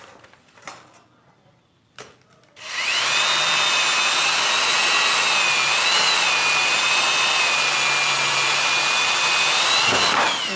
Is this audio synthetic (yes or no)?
no